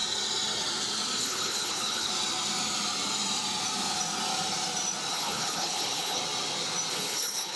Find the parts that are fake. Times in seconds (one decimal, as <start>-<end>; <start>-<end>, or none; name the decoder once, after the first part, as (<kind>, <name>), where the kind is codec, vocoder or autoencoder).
1.2-2.1 (codec, HILCodec); 5.1-6.2; 6.9-7.6